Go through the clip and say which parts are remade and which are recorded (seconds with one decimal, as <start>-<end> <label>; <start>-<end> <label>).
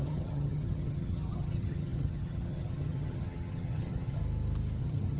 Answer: 0.0-4.2 remade; 4.2-4.8 recorded; 4.8-5.2 remade